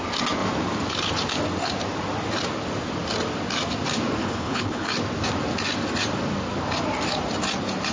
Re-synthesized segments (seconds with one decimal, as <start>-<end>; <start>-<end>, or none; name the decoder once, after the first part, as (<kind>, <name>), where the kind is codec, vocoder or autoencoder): 4.2-4.9 (codec, HILCodec)